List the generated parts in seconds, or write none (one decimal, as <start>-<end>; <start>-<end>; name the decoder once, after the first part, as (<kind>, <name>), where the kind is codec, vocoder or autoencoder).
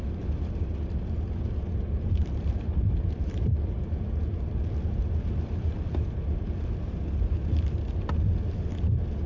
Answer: 2.2-5.6 (vocoder, BigVGAN v2)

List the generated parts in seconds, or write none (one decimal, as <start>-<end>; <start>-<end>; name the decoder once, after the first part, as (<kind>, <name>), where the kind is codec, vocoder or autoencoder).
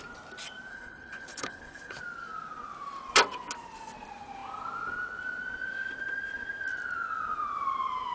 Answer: 0.7-2.0 (codec, HILCodec)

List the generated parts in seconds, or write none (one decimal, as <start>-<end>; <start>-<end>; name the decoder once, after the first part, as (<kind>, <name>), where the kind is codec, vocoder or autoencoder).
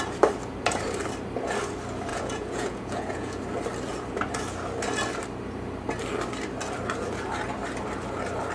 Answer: 2.1-3.4 (vocoder, Vocos)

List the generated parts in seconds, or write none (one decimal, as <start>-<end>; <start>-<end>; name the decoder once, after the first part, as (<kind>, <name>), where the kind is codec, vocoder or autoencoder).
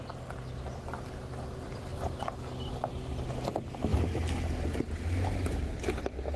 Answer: none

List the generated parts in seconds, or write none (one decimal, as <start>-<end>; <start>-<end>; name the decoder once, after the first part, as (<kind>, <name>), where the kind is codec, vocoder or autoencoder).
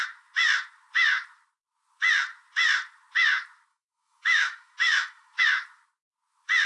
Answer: 3.7-5.4 (autoencoder, DAC-VAE)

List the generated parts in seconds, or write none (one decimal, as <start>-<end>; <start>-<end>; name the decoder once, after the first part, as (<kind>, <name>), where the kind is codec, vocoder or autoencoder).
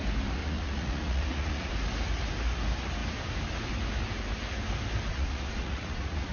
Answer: 0.4-1.7 (vocoder, Vocos); 5.1-6.3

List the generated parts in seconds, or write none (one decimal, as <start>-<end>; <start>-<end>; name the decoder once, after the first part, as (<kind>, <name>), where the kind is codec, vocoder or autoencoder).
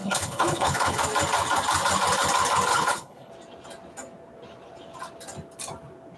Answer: 0.0-1.0 (codec, HILCodec); 2.7-3.3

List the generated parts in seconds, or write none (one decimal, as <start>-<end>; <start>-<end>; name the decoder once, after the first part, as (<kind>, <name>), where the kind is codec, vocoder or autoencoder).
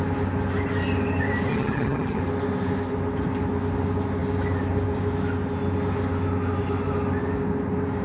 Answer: 1.5-2.2 (vocoder, HiFi-GAN)